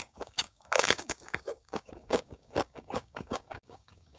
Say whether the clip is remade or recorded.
remade